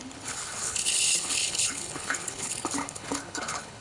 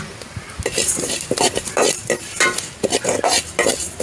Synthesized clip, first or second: first